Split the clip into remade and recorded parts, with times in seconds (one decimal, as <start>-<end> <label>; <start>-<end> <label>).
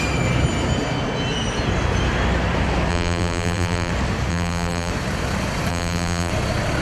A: 0.0-2.9 recorded; 2.9-3.9 remade; 3.9-4.3 recorded; 4.3-4.9 remade; 4.9-5.7 recorded; 5.7-6.3 remade; 6.3-6.8 recorded